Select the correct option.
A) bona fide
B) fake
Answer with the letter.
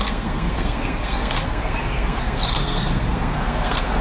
B